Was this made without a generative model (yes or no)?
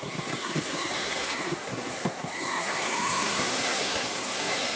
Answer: no